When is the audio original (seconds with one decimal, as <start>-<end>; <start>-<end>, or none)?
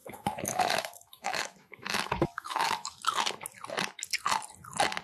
3.0-5.0